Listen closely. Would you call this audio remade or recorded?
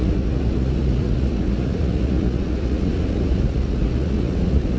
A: remade